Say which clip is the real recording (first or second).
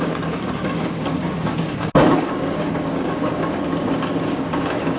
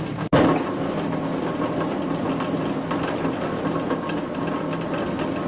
second